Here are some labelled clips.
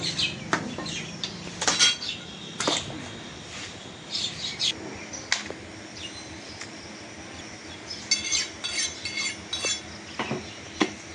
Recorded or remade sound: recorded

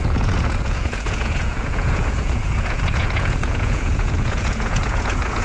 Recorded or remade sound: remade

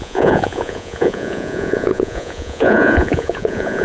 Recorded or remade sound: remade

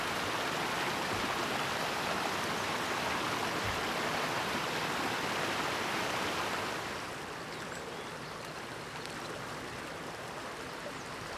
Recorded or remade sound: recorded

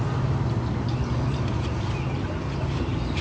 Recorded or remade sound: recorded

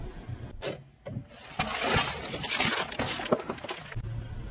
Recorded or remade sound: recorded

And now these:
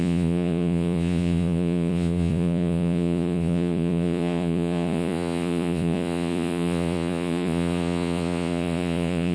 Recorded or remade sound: remade